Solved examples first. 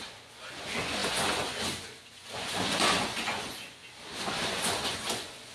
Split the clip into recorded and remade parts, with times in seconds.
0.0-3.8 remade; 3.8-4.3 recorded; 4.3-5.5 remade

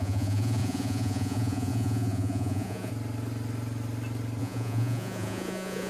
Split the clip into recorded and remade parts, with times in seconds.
0.0-2.9 remade; 2.9-4.4 recorded; 4.4-5.9 remade

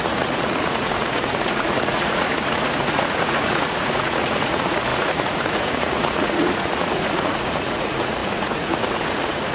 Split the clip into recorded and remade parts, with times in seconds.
0.0-9.5 remade

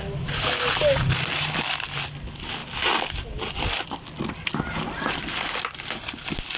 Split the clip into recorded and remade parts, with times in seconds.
0.0-6.6 recorded